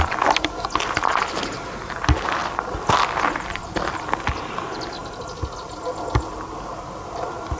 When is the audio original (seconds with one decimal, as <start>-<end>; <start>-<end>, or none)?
0.0-7.6